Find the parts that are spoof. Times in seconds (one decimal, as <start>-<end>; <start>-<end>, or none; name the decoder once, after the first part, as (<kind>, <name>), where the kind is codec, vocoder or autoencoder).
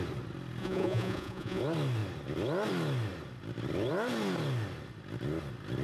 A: 0.6-1.6 (vocoder, Vocos)